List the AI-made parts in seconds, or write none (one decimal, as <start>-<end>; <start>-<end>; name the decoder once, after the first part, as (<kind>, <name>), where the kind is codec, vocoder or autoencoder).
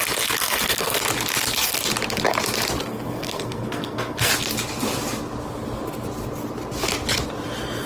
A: 0.4-1.0 (codec, SNAC); 2.9-4.3